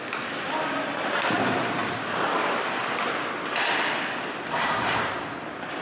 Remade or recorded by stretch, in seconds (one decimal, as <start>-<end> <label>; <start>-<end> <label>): 0.0-5.8 recorded